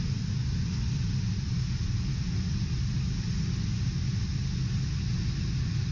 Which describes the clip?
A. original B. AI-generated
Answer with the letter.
A